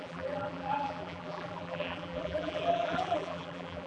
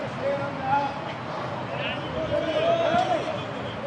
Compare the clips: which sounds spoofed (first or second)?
first